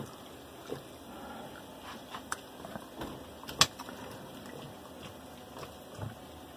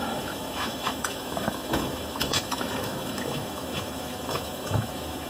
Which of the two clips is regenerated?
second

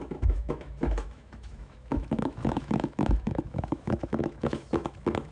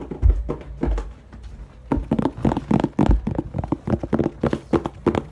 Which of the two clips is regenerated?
first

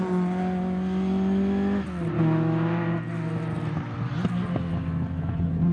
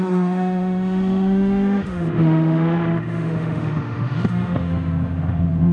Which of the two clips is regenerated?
second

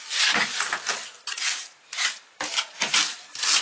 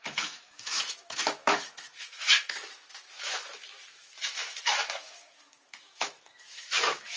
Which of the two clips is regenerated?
second